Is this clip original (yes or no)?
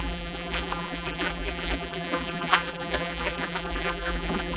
no